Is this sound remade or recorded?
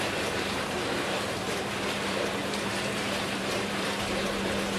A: remade